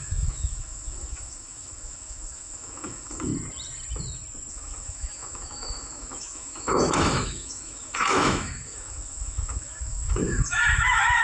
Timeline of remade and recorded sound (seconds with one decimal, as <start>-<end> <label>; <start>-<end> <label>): 0.0-3.3 remade; 3.3-4.5 recorded; 4.5-11.2 remade